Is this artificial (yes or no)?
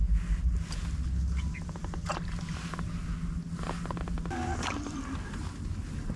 no